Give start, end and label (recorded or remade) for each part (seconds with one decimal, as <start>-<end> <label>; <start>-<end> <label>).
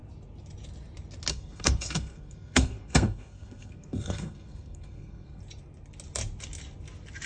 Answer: 0.0-1.3 recorded; 1.3-5.4 remade; 5.4-7.3 recorded